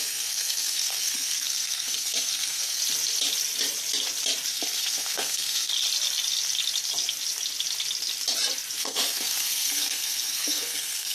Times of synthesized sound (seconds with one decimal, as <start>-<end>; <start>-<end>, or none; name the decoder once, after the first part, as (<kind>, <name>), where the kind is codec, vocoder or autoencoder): 0.0-2.8 (codec, SNAC); 4.5-5.7; 8.8-11.1